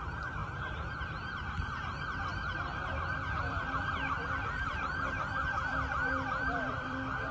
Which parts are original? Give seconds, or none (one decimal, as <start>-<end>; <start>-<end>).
0.4-0.9